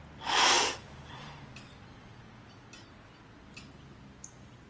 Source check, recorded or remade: recorded